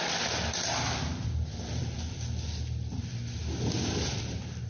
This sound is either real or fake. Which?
fake